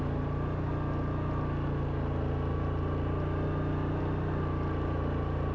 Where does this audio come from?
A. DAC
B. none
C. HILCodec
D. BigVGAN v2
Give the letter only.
B